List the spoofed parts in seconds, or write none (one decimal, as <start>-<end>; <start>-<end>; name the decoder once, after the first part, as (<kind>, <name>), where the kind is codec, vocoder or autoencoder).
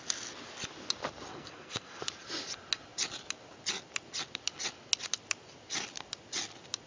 1.3-2.0 (codec, SNAC)